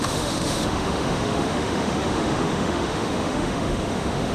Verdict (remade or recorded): remade